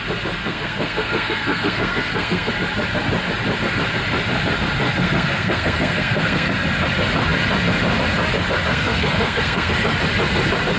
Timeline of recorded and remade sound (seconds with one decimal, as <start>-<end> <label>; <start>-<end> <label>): 0.0-0.4 recorded; 0.4-2.5 remade; 2.5-4.9 recorded; 4.9-6.5 remade; 6.5-8.7 recorded; 8.7-9.7 remade; 9.7-10.8 recorded